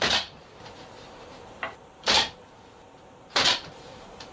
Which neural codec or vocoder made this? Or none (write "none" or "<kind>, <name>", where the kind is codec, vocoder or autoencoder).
vocoder, BigVGAN v2